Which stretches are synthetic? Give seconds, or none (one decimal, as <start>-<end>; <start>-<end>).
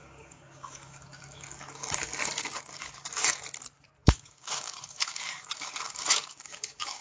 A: 0.0-3.4; 4.0-7.0